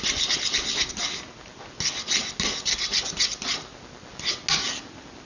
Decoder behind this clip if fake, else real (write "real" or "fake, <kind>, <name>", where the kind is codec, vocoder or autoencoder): real